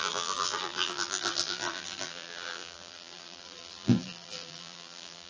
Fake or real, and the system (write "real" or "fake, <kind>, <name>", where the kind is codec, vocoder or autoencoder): fake, vocoder, BigVGAN v2